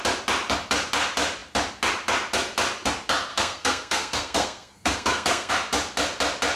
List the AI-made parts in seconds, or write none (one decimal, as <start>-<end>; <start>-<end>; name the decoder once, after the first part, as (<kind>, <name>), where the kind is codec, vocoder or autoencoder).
3.3-5.5 (codec, SNAC)